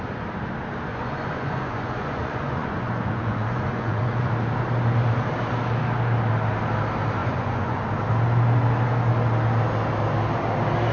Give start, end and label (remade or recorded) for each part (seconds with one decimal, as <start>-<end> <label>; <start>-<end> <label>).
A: 0.0-0.9 recorded; 0.9-4.3 remade; 4.3-7.2 recorded; 7.2-7.8 remade; 7.8-10.9 recorded